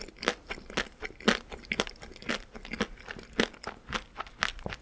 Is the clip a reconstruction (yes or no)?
no